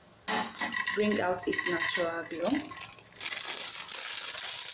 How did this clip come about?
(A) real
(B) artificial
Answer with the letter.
A